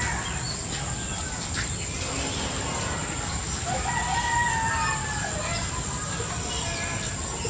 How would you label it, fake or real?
real